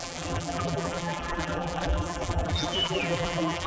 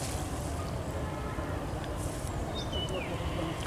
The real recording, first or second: second